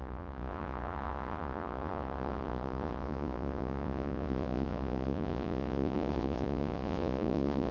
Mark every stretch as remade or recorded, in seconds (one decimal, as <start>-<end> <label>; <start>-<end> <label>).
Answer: 0.0-7.7 remade